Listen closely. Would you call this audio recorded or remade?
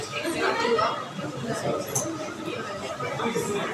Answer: recorded